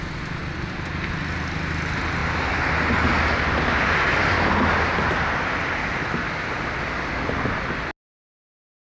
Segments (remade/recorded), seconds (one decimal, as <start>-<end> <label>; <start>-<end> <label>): 0.0-9.0 recorded